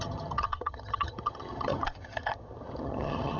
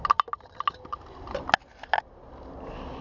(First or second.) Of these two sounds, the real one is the second